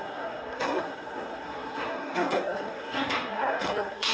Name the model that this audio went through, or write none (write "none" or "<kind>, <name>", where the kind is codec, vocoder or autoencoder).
codec, SNAC